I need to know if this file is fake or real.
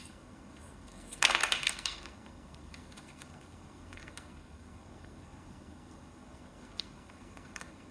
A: fake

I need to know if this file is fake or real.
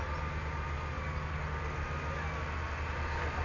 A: real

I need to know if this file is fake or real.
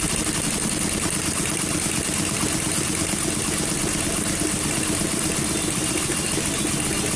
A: real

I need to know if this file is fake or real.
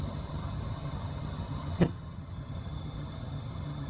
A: fake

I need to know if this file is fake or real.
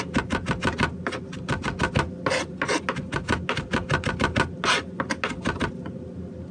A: real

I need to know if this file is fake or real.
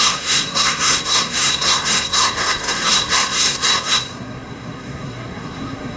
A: fake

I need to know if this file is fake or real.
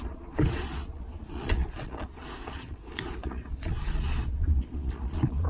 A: fake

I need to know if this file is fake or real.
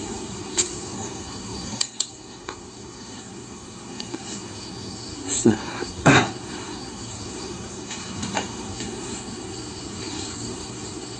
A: fake